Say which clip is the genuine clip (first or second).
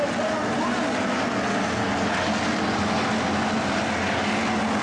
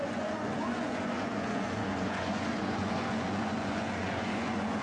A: first